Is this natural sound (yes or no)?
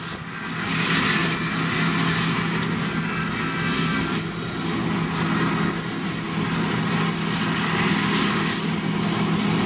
yes